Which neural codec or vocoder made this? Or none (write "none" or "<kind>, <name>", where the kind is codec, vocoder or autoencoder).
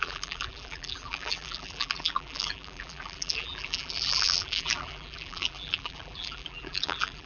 vocoder, BigVGAN v2